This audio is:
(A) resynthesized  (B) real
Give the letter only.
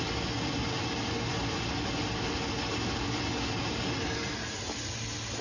B